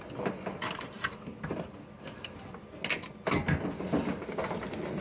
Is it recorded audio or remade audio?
recorded